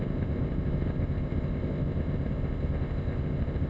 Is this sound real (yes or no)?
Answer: no